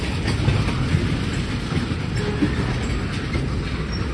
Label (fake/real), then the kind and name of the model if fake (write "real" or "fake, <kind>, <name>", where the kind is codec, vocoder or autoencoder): real